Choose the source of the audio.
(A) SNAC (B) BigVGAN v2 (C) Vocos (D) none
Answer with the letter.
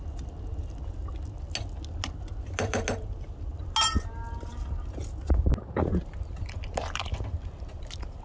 D